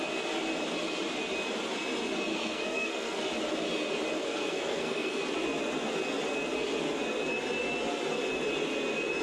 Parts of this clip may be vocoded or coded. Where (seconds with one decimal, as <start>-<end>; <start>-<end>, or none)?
2.3-3.2; 4.2-5.2